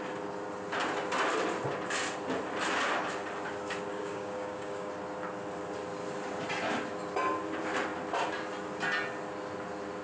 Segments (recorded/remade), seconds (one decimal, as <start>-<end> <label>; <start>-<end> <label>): 0.0-3.9 recorded; 3.9-4.9 remade; 4.9-10.0 recorded

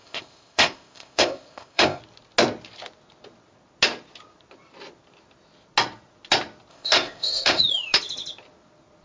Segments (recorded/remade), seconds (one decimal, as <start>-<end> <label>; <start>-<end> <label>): 0.0-2.0 remade; 2.0-6.7 recorded; 6.7-7.6 remade; 7.6-9.0 recorded

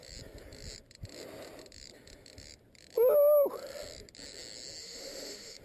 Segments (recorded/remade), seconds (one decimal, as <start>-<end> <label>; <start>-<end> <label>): 0.0-4.8 recorded; 4.8-5.6 remade

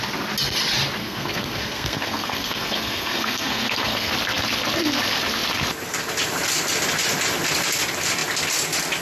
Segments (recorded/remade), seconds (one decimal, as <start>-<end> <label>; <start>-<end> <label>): 0.0-1.0 recorded; 1.0-4.1 remade; 4.1-9.0 recorded

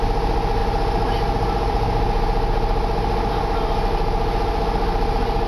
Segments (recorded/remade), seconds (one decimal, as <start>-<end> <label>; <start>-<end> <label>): 0.0-5.5 recorded

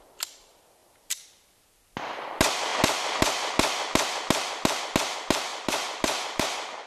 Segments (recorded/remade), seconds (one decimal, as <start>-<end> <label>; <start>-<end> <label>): 0.0-0.8 recorded; 0.8-1.6 remade; 1.6-5.5 recorded; 5.5-6.4 remade; 6.4-6.9 recorded

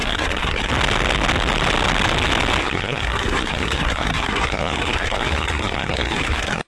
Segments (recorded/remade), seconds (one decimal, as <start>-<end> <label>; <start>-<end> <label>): 0.0-0.7 remade; 0.7-2.6 recorded; 2.6-6.7 remade